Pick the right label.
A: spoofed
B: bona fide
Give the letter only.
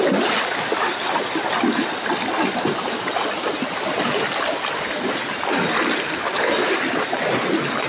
B